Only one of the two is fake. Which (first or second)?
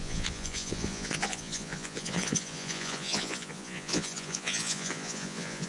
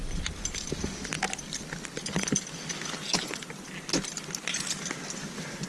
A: first